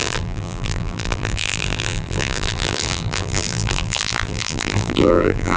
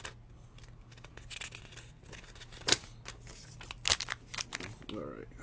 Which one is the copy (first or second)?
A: first